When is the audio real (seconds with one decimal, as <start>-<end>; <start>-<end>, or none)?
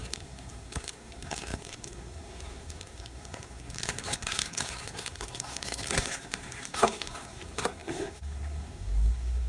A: none